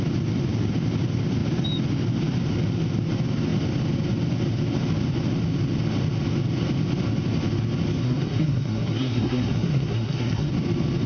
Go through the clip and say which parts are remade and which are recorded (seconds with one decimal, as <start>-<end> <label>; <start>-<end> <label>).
0.0-8.0 recorded; 8.0-10.5 remade; 10.5-11.1 recorded

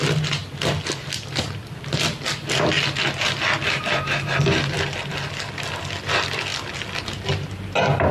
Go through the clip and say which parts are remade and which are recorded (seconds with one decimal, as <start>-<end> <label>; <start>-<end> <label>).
0.0-8.1 recorded